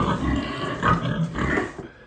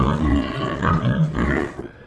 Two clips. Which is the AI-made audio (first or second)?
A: second